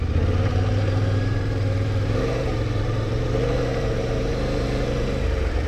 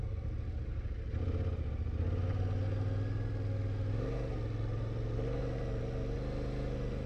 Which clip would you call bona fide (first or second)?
second